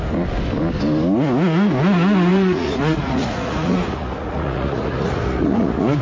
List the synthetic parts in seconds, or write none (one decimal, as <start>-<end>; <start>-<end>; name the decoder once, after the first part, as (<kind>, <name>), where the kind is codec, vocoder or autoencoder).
2.3-6.0 (vocoder, Vocos)